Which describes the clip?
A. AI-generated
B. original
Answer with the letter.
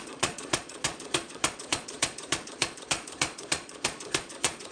A